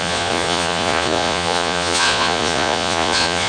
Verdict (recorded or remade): remade